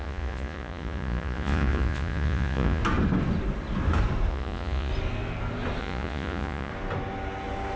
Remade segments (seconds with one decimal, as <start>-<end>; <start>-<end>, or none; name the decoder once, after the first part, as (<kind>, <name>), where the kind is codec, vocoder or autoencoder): 0.0-2.8 (vocoder, Vocos); 4.3-4.9; 5.8-6.7